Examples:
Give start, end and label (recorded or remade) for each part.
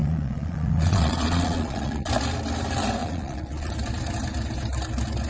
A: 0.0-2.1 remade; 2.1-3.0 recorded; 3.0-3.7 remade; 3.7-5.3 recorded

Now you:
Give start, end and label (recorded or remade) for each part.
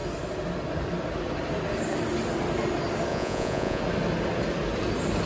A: 0.0-3.1 recorded; 3.1-3.8 remade; 3.8-5.3 recorded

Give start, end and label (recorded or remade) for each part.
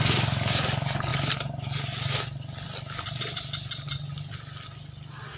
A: 0.0-5.4 recorded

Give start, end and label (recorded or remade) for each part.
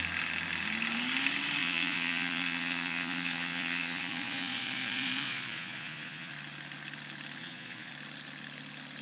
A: 0.0-1.6 recorded; 1.6-6.3 remade; 6.3-7.4 recorded; 7.4-7.9 remade; 7.9-9.0 recorded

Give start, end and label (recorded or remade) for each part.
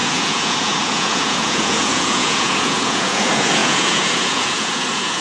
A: 0.0-5.2 remade